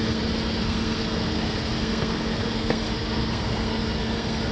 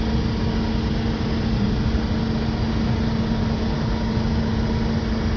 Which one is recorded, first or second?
second